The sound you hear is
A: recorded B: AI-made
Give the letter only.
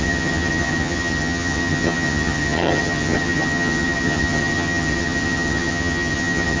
B